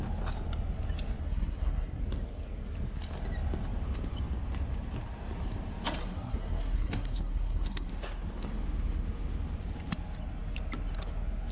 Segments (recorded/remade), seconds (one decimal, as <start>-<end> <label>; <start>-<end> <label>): 0.0-1.2 recorded; 1.2-2.0 remade; 2.0-6.0 recorded; 6.0-7.9 remade; 7.9-11.5 recorded